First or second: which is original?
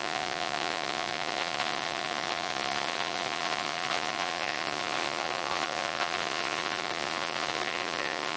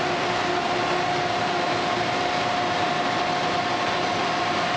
second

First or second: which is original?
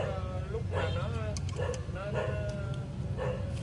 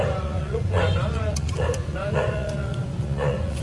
first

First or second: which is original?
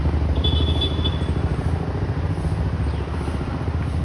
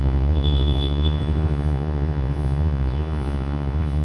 first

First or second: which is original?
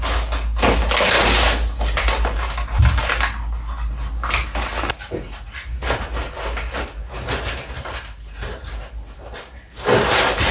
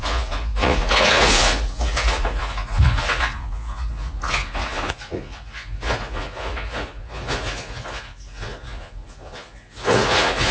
first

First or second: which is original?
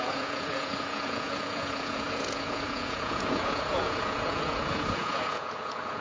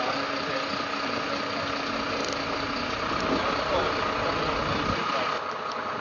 second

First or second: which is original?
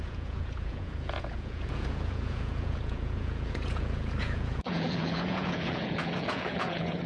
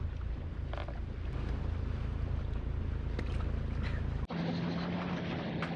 second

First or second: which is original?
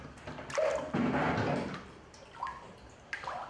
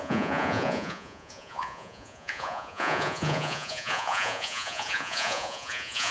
first